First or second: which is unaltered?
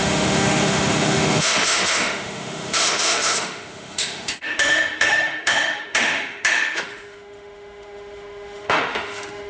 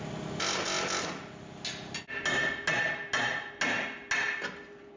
second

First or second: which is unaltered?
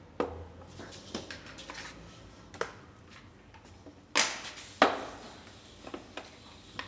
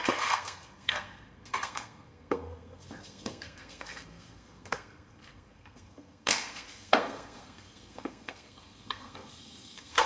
first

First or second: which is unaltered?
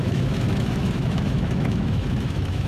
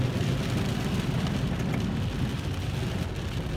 second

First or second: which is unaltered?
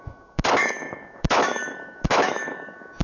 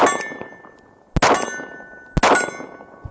second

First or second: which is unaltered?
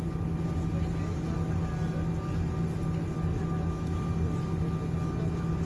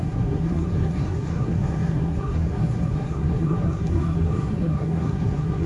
first